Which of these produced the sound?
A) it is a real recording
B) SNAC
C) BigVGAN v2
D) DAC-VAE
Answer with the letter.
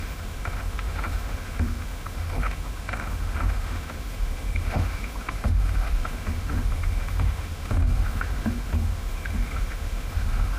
D